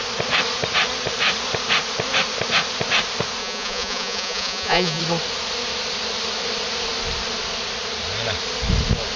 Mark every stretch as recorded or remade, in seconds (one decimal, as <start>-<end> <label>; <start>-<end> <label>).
0.0-3.4 recorded; 3.4-5.0 remade; 5.0-9.2 recorded